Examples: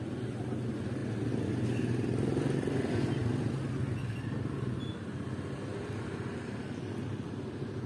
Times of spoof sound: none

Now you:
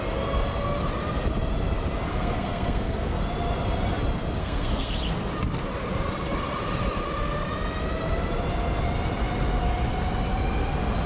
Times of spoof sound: 2.1-3.2 (codec, SNAC); 4.4-4.9

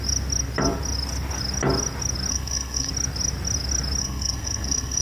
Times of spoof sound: 2.3-2.9 (codec, SNAC); 4.0-5.0

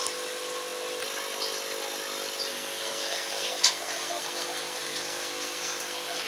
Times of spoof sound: 2.5-6.3 (codec, SNAC)

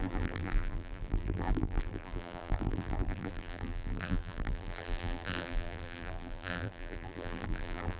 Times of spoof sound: 0.0-8.0 (vocoder, BigVGAN v2)

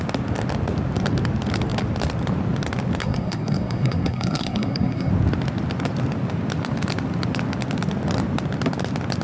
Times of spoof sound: 3.0-5.1 (codec, SNAC)

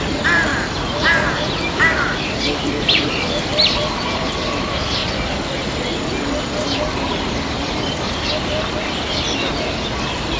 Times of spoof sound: 0.0-0.5 (vocoder, BigVGAN v2); 1.3-5.0; 8.8-10.4

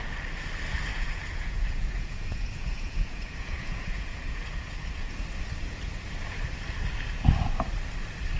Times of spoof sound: 0.9-5.1 (vocoder, Vocos)